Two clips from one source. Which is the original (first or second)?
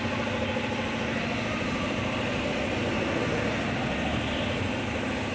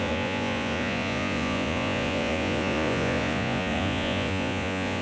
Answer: first